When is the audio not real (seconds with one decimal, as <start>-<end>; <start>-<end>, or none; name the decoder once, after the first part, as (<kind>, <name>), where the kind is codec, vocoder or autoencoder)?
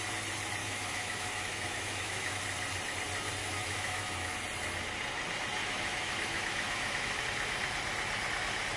0.6-2.4 (autoencoder, DAC-VAE); 3.4-4.3; 5.6-7.2